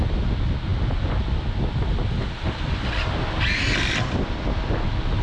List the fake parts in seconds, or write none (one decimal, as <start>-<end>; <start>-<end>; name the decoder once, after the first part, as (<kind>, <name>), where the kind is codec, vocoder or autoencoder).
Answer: none